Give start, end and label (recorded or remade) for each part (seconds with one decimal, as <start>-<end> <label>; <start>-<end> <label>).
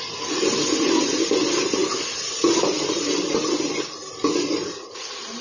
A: 0.0-5.4 recorded